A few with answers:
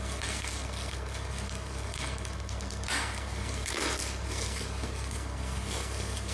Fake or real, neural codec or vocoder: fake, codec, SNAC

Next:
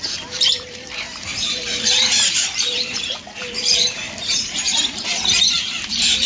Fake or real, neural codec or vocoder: fake, vocoder, BigVGAN v2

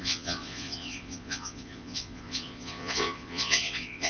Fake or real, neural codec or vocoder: fake, vocoder, Vocos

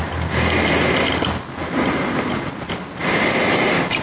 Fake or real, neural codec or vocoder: real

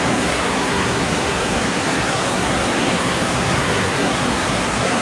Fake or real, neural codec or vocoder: fake, codec, SNAC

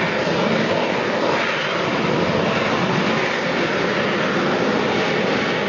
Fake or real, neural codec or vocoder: real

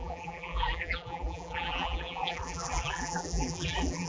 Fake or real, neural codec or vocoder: fake, vocoder, BigVGAN v2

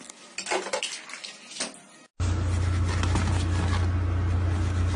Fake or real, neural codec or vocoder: real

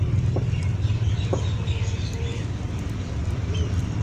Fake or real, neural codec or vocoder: fake, vocoder, BigVGAN v2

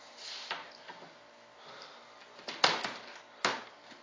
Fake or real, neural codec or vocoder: real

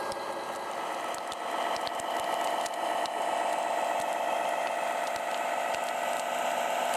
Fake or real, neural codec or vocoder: real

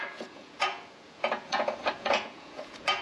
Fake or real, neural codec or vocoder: fake, vocoder, Vocos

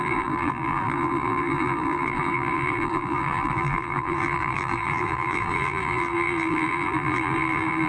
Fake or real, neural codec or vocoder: fake, vocoder, BigVGAN v2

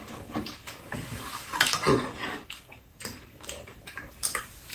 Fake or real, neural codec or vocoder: fake, codec, DAC